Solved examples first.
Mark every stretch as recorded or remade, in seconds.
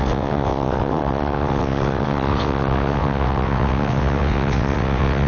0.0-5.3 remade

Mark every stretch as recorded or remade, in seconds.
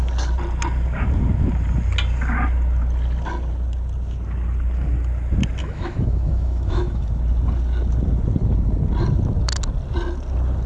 0.0-5.6 recorded; 5.6-7.1 remade; 7.1-10.7 recorded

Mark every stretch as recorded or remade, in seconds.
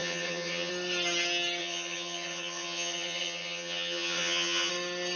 0.0-0.7 remade; 0.7-1.6 recorded; 1.6-4.7 remade; 4.7-5.2 recorded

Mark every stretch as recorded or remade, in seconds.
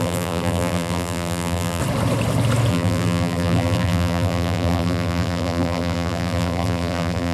0.0-1.8 remade; 1.8-2.7 recorded; 2.7-7.3 remade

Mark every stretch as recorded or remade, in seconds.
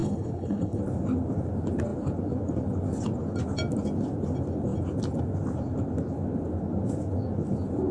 0.0-0.8 remade; 0.8-7.9 recorded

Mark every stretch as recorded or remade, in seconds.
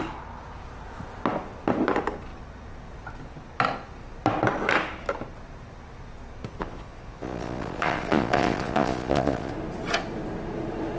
0.0-6.6 recorded; 6.6-9.5 remade; 9.5-11.0 recorded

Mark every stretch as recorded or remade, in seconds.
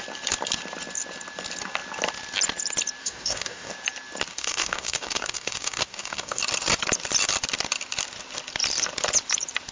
0.0-3.0 recorded; 3.0-3.7 remade; 3.7-4.3 recorded; 4.3-6.4 remade; 6.4-9.7 recorded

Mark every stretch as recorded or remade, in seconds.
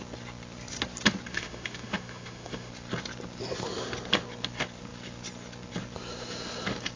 0.0-1.3 recorded; 1.3-2.7 remade; 2.7-7.0 recorded